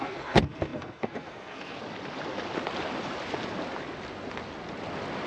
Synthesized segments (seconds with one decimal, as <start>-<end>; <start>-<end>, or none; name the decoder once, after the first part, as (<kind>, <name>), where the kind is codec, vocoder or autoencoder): 0.0-1.8 (codec, SNAC)